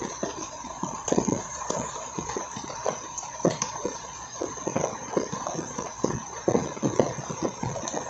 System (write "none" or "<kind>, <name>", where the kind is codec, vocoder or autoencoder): vocoder, Vocos